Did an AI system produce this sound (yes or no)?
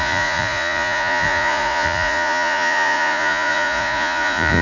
yes